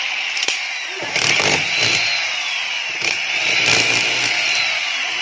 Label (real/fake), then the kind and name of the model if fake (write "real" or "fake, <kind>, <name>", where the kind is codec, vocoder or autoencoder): real